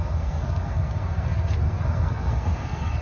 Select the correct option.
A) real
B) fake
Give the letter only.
B